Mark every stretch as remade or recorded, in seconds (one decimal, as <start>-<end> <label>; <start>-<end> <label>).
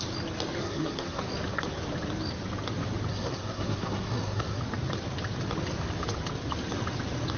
0.0-0.6 recorded; 0.6-1.2 remade; 1.2-3.1 recorded; 3.1-4.6 remade; 4.6-7.4 recorded